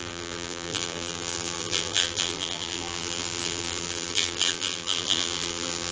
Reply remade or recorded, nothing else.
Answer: remade